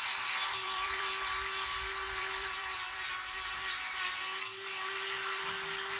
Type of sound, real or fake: fake